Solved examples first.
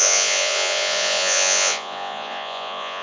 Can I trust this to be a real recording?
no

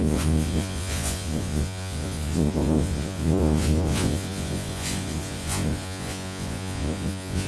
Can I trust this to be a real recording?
no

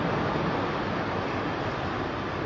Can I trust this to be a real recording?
yes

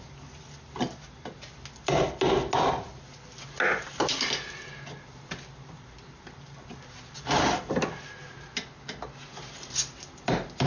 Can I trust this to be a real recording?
yes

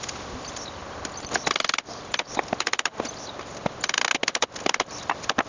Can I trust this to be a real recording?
yes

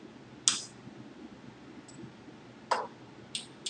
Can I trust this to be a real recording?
yes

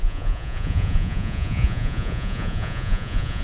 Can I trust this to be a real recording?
no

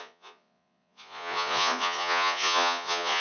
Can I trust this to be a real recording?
no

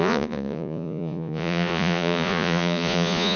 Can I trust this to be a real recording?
no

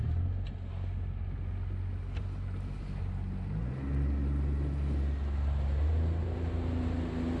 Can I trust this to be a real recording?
yes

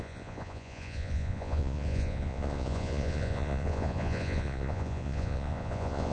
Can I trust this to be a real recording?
no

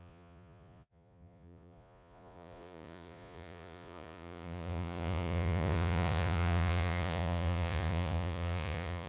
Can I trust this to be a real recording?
no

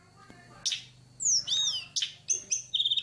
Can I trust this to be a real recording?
yes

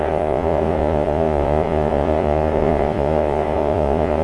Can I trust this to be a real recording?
no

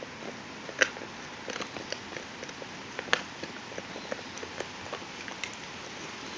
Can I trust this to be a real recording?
yes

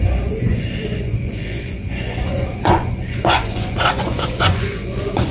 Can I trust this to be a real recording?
no